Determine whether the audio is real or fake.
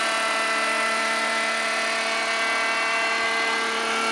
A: real